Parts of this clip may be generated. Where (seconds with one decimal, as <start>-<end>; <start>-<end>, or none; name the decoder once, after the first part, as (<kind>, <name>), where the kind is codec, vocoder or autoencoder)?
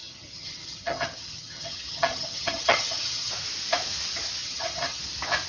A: 0.0-3.3 (vocoder, HiFi-GAN); 4.4-5.0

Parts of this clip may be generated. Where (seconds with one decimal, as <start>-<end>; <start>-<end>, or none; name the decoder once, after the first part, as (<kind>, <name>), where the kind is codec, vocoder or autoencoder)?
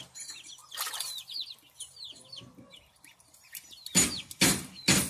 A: none